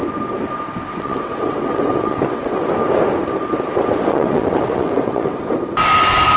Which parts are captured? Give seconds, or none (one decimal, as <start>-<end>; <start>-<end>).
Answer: 0.0-0.9; 2.7-4.1; 5.4-6.4